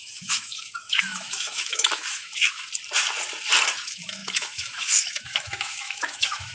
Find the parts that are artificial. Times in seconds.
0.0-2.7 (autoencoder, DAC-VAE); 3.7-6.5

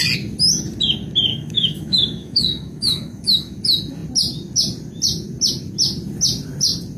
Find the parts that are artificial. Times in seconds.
1.3-3.6 (autoencoder, DAC-VAE)

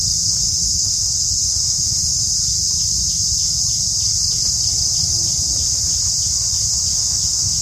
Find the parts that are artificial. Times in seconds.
0.5-2.3 (autoencoder, DAC-VAE); 6.9-7.6

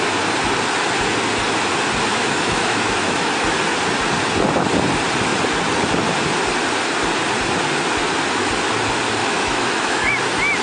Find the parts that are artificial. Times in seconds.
2.1-3.3 (autoencoder, DAC-VAE); 9.2-10.1

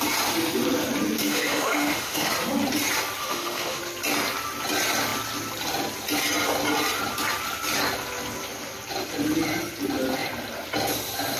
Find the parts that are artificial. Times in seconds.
1.2-2.3 (autoencoder, DAC-VAE); 3.2-3.8